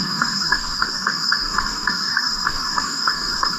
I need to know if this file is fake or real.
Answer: fake